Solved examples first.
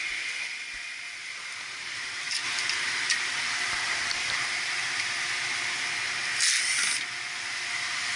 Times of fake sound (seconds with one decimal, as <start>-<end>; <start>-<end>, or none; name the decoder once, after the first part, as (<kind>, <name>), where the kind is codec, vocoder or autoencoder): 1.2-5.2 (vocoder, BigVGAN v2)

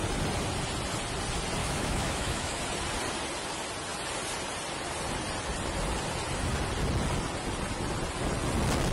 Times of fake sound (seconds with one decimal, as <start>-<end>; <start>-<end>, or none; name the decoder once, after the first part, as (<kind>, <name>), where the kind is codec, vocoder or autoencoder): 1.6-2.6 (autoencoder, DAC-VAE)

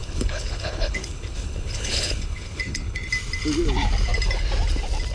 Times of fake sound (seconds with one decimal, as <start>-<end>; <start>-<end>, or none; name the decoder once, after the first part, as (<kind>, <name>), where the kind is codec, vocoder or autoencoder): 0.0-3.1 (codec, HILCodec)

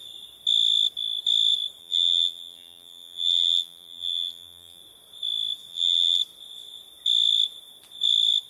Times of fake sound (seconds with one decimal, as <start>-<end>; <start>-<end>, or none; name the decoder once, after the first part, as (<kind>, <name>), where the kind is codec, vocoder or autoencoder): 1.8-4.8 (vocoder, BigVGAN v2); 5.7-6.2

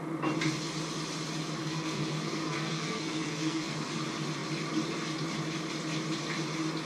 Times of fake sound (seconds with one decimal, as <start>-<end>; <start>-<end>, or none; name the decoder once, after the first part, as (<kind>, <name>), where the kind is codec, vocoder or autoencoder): 1.6-4.0 (codec, SNAC)

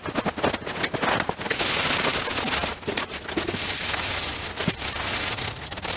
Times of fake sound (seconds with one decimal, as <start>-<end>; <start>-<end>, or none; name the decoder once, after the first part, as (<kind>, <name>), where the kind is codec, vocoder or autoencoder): none